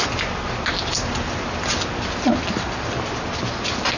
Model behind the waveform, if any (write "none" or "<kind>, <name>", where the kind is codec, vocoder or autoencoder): none